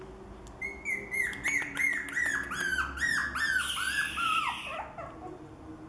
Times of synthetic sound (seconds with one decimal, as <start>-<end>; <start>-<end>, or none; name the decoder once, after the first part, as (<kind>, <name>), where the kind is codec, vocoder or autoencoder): none